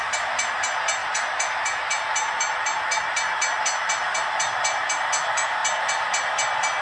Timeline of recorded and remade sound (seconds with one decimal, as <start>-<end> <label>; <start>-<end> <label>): 0.0-6.8 recorded